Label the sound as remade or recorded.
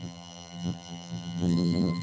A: remade